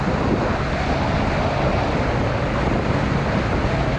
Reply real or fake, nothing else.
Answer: real